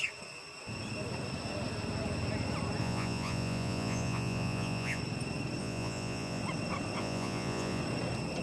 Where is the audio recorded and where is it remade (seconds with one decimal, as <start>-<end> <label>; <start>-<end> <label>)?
0.0-2.8 recorded; 2.8-5.0 remade; 5.0-5.6 recorded; 5.6-6.4 remade; 6.4-7.0 recorded; 7.0-7.8 remade; 7.8-8.4 recorded